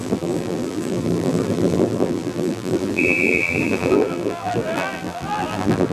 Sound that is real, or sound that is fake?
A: fake